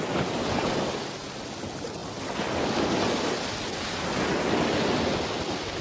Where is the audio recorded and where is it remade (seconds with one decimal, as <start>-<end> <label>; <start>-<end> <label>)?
0.0-5.8 recorded